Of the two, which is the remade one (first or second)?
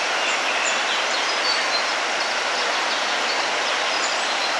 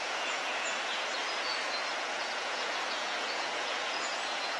second